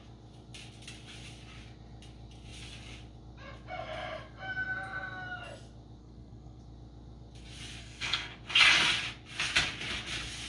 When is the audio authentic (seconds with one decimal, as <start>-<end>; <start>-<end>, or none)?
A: 0.0-6.0; 6.6-7.8; 8.4-10.5